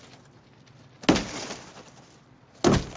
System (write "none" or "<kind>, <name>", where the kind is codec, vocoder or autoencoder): none